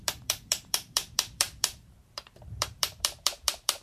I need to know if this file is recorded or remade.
remade